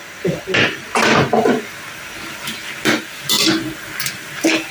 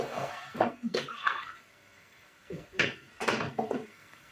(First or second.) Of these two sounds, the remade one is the second